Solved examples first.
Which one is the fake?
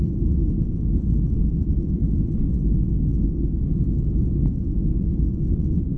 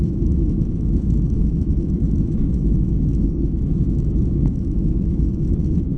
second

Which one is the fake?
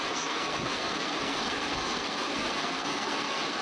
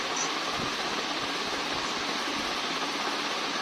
first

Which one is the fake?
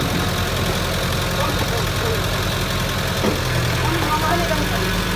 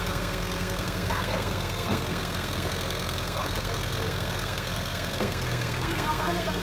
second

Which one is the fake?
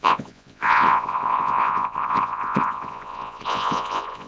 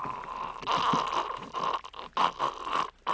first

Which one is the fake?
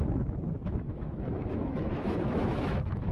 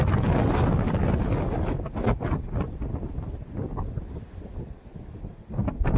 first